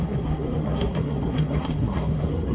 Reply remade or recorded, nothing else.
remade